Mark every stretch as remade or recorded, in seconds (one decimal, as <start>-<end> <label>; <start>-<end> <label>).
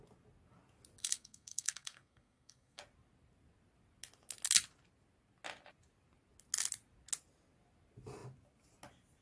0.0-1.0 recorded; 1.0-2.8 remade; 2.8-9.2 recorded